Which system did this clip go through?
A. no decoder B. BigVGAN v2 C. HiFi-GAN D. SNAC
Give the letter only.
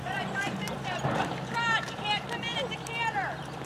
B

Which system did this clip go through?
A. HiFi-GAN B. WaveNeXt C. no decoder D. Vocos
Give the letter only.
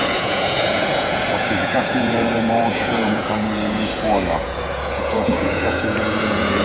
D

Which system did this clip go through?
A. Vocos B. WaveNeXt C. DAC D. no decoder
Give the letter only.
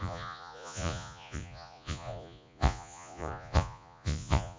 A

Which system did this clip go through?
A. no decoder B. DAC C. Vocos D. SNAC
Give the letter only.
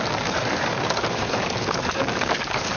B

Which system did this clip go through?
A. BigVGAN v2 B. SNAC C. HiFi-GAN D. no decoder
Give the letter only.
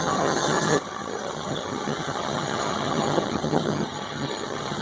C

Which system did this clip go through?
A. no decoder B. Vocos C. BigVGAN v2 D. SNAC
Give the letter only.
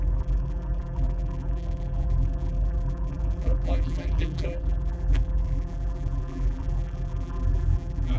C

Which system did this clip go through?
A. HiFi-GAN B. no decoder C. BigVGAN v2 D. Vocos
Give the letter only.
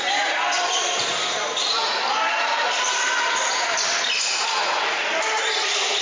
B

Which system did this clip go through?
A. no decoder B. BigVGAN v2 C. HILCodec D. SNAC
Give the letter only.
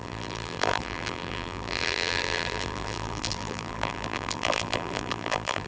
B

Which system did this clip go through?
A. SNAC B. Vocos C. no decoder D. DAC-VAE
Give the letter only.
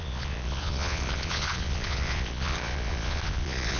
B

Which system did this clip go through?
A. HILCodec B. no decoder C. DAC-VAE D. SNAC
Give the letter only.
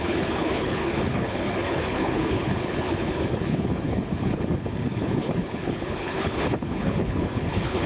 A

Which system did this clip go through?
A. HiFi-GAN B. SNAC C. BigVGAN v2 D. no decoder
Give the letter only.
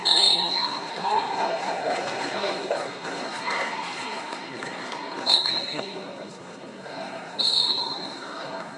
B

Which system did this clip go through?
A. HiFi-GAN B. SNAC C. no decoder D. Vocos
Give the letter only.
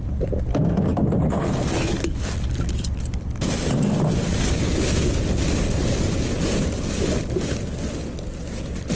C